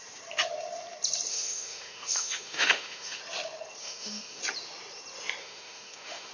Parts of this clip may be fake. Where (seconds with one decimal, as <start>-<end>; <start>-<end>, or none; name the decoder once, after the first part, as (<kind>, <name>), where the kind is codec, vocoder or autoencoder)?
1.3-3.2 (autoencoder, DAC-VAE); 3.8-4.4; 5.4-6.3